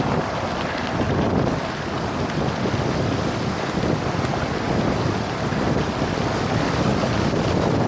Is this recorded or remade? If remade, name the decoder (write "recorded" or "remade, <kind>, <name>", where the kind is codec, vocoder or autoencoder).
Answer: recorded